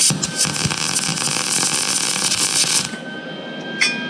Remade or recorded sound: recorded